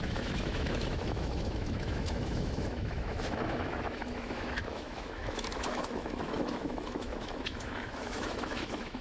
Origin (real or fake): fake